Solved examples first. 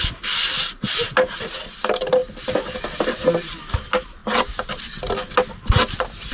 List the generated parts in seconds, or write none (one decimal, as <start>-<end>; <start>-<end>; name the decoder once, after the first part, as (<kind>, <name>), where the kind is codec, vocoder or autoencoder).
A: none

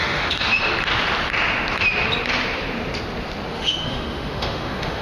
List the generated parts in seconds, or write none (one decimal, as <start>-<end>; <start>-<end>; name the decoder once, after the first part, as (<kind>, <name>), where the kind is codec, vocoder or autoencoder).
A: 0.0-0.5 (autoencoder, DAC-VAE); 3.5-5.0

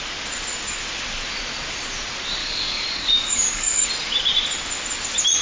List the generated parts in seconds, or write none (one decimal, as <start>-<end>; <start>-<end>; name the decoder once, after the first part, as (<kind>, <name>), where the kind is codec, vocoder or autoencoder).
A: 2.4-3.9 (codec, DAC)

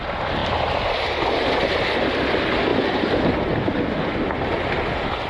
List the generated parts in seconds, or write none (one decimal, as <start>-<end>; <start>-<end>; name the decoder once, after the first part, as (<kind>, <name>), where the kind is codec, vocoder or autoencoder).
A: 2.7-3.8 (vocoder, BigVGAN v2)